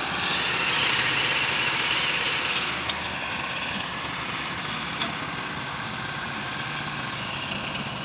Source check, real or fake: real